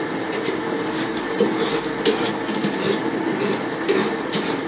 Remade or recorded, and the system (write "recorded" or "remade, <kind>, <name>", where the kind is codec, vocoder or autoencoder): recorded